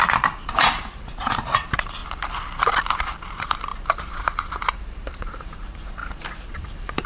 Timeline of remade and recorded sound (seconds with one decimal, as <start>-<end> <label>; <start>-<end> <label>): 0.0-2.0 remade; 2.0-2.8 recorded; 2.8-6.0 remade; 6.0-6.5 recorded; 6.5-7.1 remade

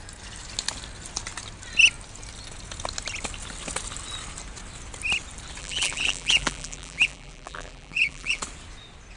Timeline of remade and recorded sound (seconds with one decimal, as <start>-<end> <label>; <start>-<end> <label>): 0.0-5.6 recorded; 5.6-8.4 remade; 8.4-9.2 recorded